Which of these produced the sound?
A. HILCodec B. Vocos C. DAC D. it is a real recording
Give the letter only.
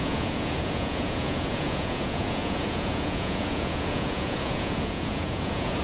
B